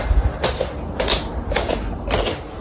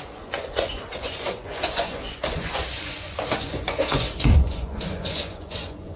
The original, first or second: first